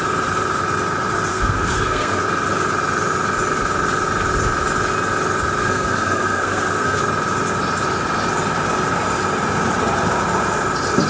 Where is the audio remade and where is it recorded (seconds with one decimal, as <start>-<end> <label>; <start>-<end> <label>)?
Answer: 0.0-1.3 recorded; 1.3-2.2 remade; 2.2-5.6 recorded; 5.6-7.0 remade; 7.0-11.1 recorded